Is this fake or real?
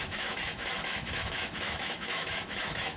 fake